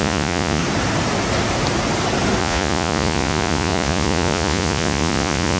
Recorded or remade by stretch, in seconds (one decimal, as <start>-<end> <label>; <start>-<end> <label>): 0.0-0.6 remade; 0.6-2.4 recorded; 2.4-5.6 remade